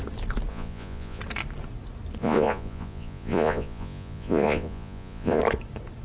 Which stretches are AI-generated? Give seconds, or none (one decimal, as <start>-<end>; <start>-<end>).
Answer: 0.5-1.2; 2.2-5.4